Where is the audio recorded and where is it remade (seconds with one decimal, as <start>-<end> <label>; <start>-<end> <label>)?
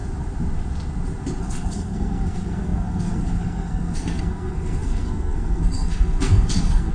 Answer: 0.0-1.4 recorded; 1.4-6.9 remade